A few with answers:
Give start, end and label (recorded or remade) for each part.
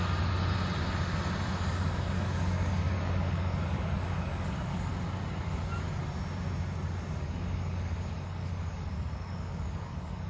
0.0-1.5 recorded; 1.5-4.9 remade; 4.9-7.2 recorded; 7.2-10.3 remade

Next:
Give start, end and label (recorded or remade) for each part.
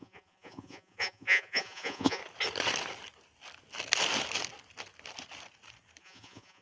0.0-2.2 remade; 2.2-6.0 recorded; 6.0-6.6 remade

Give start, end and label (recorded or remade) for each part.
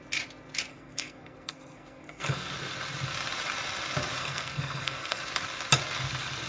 0.0-0.7 recorded; 0.7-2.5 remade; 2.5-4.2 recorded; 4.2-5.2 remade; 5.2-6.5 recorded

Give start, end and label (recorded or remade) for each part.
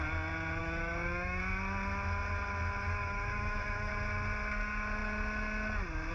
0.0-0.6 recorded; 0.6-1.4 remade; 1.4-3.0 recorded; 3.0-3.9 remade; 3.9-6.1 recorded